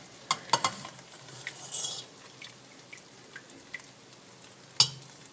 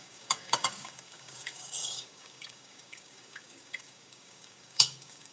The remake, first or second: second